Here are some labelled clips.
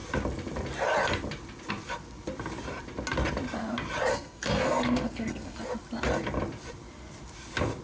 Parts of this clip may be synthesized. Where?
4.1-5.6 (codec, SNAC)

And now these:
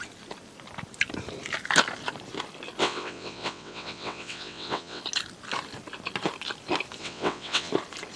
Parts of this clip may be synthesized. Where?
2.8-5.0 (vocoder, WaveNeXt); 7.0-7.7

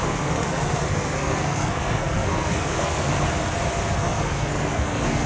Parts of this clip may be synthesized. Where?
0.0-3.1 (codec, SNAC); 4.0-5.3

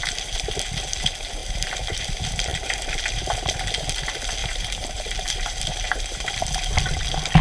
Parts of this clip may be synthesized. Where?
1.4-2.0 (vocoder, BigVGAN v2); 2.5-3.3; 4.4-6.3

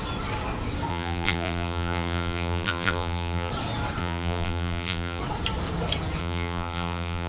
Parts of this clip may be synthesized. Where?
0.9-3.5 (vocoder, BigVGAN v2); 4.0-5.2; 6.2-7.3

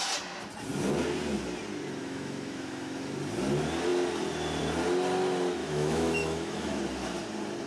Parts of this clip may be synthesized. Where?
2.0-3.1 (autoencoder, DAC-VAE); 5.6-6.8

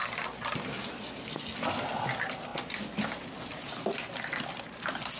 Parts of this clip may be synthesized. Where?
none

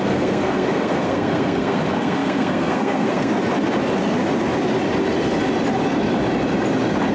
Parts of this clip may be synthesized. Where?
0.0-3.3 (codec, SNAC)